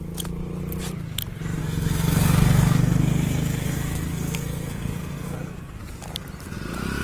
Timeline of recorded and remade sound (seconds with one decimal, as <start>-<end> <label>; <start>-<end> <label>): 0.0-1.6 recorded; 1.6-5.8 remade; 5.8-7.0 recorded